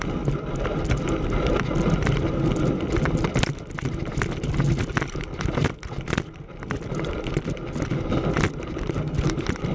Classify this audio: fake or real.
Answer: real